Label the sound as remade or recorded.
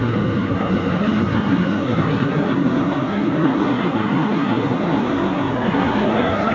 remade